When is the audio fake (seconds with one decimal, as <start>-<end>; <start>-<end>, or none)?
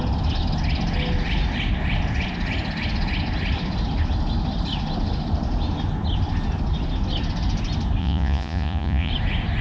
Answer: 8.0-9.1